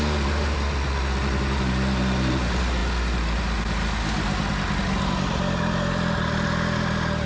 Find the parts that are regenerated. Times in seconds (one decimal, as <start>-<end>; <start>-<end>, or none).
none